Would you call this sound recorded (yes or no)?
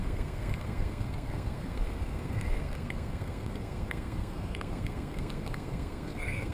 no